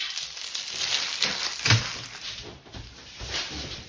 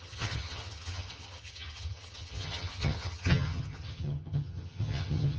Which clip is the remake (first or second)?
second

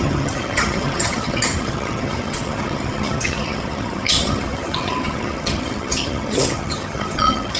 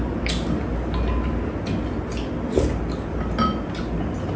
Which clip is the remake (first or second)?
first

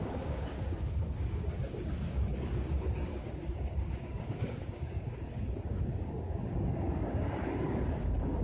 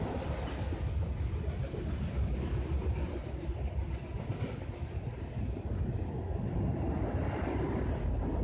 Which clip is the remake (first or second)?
first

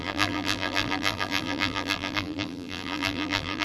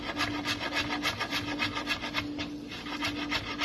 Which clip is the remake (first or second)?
first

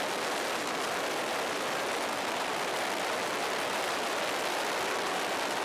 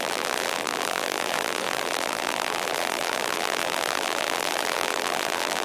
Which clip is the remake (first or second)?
second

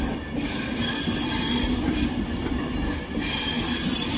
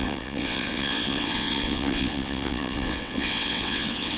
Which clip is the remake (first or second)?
second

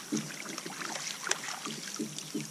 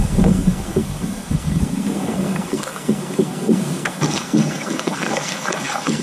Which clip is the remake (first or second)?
second